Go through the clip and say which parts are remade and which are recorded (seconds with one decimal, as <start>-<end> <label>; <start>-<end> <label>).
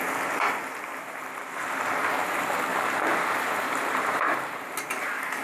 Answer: 0.0-2.7 recorded; 2.7-4.5 remade; 4.5-5.4 recorded